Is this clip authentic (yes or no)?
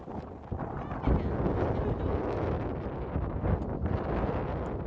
yes